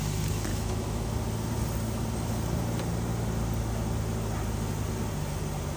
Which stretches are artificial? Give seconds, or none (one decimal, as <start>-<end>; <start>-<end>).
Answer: 0.5-1.1